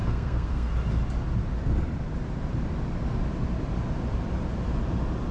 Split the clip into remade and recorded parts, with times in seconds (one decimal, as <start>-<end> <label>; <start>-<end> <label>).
0.0-0.7 remade; 0.7-5.3 recorded